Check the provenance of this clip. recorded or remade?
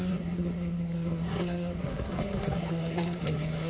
remade